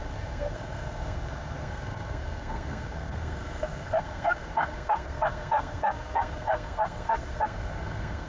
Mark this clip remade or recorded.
remade